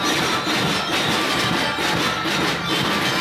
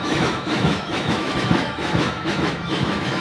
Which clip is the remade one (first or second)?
second